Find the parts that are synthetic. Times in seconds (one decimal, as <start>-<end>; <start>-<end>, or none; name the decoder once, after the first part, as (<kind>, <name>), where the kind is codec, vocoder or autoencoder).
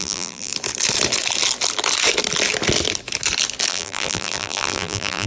0.0-0.5 (vocoder, BigVGAN v2); 3.7-5.3